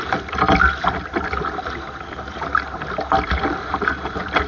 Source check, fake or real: real